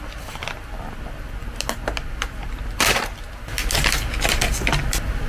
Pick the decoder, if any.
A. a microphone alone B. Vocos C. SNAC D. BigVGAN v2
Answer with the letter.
A